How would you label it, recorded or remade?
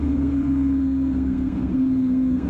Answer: remade